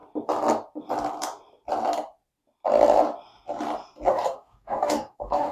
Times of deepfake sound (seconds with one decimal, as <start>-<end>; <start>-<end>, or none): 4.1-5.5